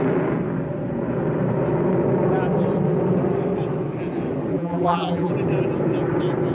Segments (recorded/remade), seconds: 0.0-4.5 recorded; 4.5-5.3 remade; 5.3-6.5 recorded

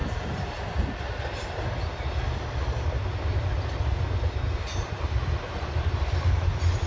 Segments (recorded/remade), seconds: 0.0-1.7 remade; 1.7-4.8 recorded; 4.8-6.5 remade; 6.5-6.9 recorded

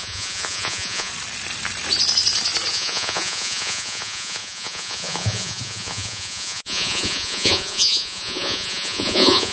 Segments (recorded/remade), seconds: 0.0-1.1 remade; 1.1-2.7 recorded; 2.7-9.5 remade

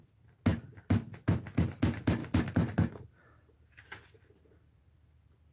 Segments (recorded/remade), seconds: 0.0-5.5 recorded

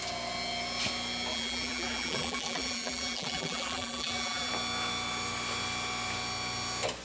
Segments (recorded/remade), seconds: 0.0-1.3 recorded; 1.3-4.5 remade; 4.5-7.0 recorded

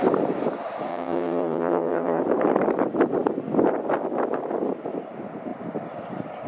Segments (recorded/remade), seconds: 0.0-0.9 recorded; 0.9-2.2 remade; 2.2-6.5 recorded